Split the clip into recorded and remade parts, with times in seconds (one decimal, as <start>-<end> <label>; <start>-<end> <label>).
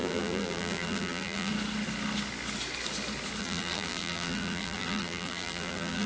0.0-1.5 remade; 1.5-3.4 recorded; 3.4-6.1 remade